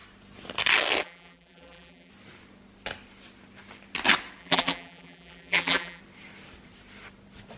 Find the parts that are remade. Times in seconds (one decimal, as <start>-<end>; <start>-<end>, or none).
1.0-2.1; 4.4-6.0